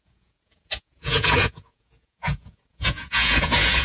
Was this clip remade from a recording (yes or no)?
yes